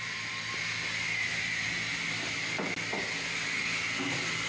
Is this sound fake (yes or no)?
no